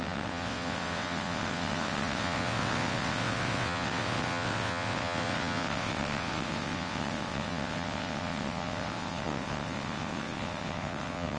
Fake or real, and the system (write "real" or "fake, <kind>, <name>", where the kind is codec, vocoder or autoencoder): fake, vocoder, WaveNeXt